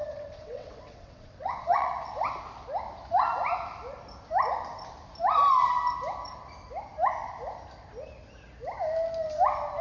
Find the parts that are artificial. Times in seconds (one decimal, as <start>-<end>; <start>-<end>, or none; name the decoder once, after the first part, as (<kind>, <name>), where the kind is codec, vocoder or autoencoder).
0.0-2.4 (vocoder, WaveNeXt)